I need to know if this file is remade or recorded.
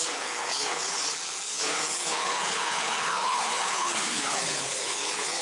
remade